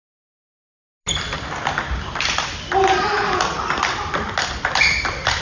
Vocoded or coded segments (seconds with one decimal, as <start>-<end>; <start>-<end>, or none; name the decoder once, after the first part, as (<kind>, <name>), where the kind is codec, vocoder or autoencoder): none